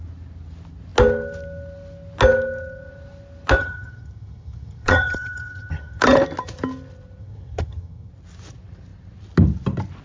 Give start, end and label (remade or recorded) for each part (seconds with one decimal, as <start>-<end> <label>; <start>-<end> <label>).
0.0-3.6 recorded; 3.6-6.0 remade; 6.0-7.2 recorded; 7.2-8.1 remade; 8.1-10.0 recorded